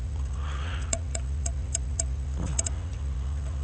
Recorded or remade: remade